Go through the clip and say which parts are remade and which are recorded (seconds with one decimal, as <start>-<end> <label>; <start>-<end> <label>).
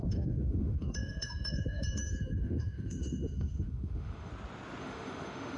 0.0-4.3 remade; 4.3-4.8 recorded; 4.8-5.6 remade